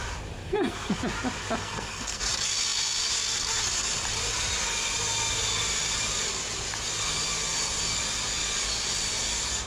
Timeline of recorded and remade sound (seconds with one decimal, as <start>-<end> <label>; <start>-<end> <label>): 0.0-0.4 recorded; 0.4-1.0 remade; 1.0-1.6 recorded; 1.6-2.2 remade; 2.2-9.7 recorded

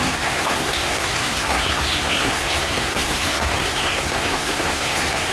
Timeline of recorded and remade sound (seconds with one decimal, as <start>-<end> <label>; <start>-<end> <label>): 0.0-5.3 remade

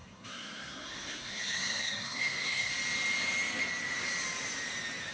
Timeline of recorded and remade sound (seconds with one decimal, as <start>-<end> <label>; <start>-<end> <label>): 0.0-2.7 remade; 2.7-5.1 recorded

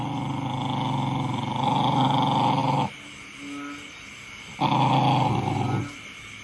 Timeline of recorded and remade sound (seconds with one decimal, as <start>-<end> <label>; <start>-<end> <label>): 0.0-6.4 recorded

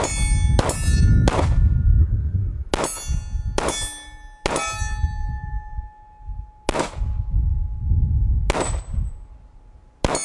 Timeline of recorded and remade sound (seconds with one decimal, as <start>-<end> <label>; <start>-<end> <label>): 0.0-2.0 recorded; 2.0-2.7 remade; 2.7-10.2 recorded

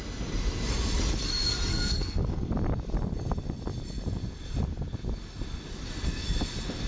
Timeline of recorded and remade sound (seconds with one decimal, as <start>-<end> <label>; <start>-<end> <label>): 0.0-1.7 recorded; 1.7-2.5 remade; 2.5-6.9 recorded

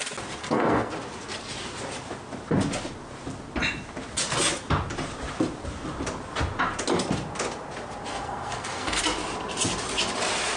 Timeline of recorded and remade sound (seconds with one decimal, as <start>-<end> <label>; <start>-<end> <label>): 0.0-0.4 recorded; 0.4-0.9 remade; 0.9-8.1 recorded; 8.1-9.0 remade; 9.0-10.6 recorded